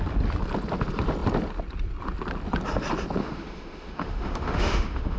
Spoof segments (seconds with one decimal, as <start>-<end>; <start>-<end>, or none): 3.2-5.2